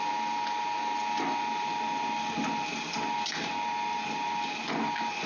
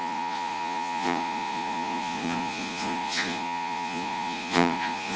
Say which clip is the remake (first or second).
second